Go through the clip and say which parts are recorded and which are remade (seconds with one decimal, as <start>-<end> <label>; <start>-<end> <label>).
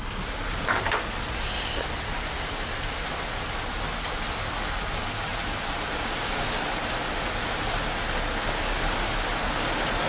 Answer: 0.0-10.1 recorded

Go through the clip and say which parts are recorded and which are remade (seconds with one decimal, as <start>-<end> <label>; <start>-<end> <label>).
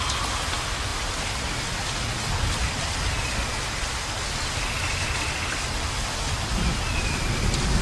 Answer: 0.0-7.8 recorded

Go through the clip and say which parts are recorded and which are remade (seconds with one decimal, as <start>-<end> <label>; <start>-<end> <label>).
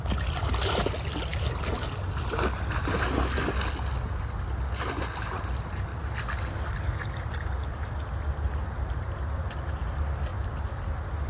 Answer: 0.0-11.3 recorded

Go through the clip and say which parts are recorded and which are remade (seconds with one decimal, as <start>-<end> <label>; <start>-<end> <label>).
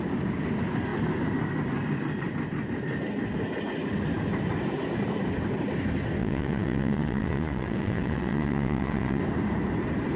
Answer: 0.0-6.2 recorded; 6.2-9.2 remade; 9.2-10.2 recorded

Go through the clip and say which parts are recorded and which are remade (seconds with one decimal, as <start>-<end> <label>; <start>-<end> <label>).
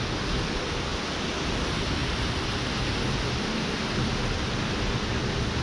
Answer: 0.0-0.9 recorded; 0.9-1.4 remade; 1.4-5.6 recorded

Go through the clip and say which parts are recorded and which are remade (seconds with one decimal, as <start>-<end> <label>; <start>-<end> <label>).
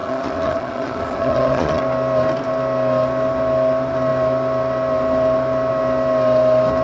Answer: 0.0-1.8 remade; 1.8-6.8 recorded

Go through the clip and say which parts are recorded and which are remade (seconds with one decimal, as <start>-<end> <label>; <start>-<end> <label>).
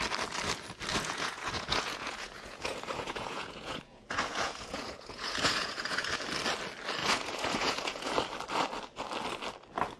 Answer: 0.0-0.9 recorded; 0.9-6.1 remade; 6.1-7.0 recorded; 7.0-8.1 remade; 8.1-10.0 recorded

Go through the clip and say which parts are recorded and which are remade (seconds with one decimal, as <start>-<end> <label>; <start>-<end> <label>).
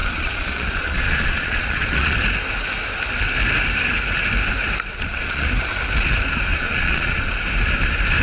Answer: 0.0-2.2 remade; 2.2-4.9 recorded; 4.9-5.5 remade; 5.5-6.5 recorded; 6.5-7.2 remade; 7.2-8.2 recorded